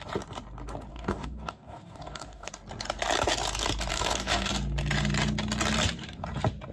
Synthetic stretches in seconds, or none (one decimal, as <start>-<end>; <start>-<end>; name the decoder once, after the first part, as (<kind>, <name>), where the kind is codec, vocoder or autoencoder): 0.9-2.5 (codec, DAC); 3.9-4.5